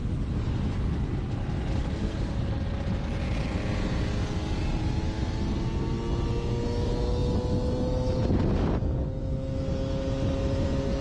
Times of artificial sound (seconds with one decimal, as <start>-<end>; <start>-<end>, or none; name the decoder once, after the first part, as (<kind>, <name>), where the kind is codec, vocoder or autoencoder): 1.8-2.4 (codec, SNAC)